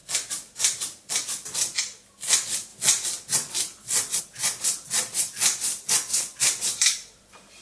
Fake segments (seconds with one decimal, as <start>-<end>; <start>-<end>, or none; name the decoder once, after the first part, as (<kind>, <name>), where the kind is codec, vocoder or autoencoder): 6.1-7.6 (vocoder, BigVGAN v2)